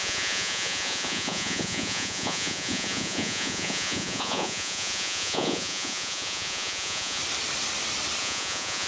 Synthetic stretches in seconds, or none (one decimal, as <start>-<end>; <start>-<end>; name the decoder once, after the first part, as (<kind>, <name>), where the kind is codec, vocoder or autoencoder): 0.0-7.2 (vocoder, Vocos); 8.2-8.9